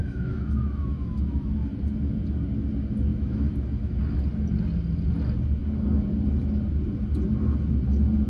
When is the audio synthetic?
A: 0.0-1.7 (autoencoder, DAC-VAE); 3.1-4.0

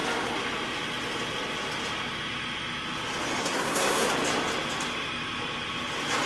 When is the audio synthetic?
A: 3.4-4.1 (codec, SNAC)

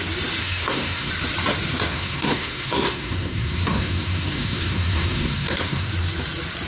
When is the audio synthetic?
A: 0.4-1.1 (codec, SNAC); 1.9-5.9

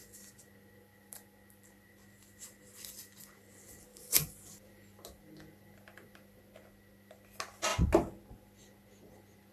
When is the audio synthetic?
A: 0.0-1.9 (vocoder, BigVGAN v2); 3.9-6.4